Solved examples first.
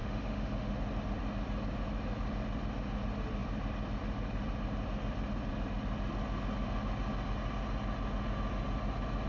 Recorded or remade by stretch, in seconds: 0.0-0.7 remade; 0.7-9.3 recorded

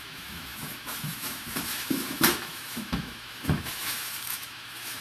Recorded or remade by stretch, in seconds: 0.0-5.0 remade

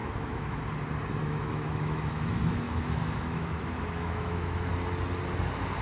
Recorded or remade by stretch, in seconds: 0.0-0.6 remade; 0.6-1.2 recorded; 1.2-4.7 remade; 4.7-5.8 recorded

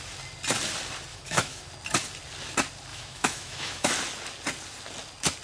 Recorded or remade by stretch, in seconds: 0.0-1.1 recorded; 1.1-1.7 remade; 1.7-2.9 recorded; 2.9-3.9 remade; 3.9-5.4 recorded

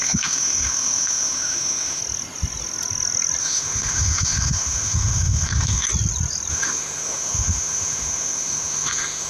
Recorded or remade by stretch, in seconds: 0.0-2.0 remade; 2.0-3.4 recorded; 3.4-5.9 remade; 5.9-6.5 recorded; 6.5-9.3 remade